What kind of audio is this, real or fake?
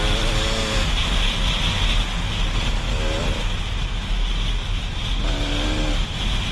real